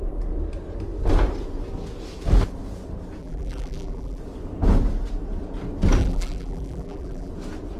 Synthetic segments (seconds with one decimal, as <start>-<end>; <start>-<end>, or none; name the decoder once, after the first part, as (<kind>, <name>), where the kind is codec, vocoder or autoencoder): 3.2-4.2 (vocoder, BigVGAN v2); 6.0-7.3